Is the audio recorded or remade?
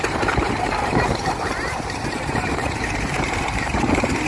remade